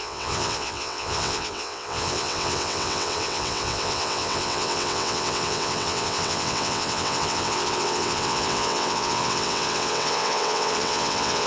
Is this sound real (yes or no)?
no